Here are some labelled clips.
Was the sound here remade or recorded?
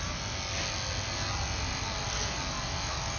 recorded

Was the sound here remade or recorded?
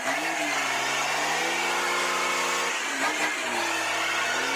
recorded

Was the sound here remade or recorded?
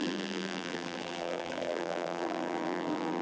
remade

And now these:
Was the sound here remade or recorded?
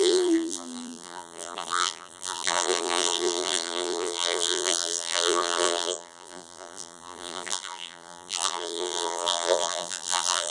remade